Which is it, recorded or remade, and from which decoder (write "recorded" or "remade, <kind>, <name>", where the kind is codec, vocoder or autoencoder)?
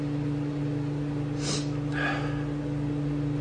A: recorded